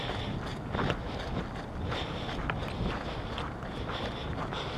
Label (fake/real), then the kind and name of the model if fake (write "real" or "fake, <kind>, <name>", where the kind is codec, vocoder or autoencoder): real